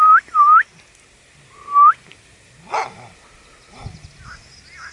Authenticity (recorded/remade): recorded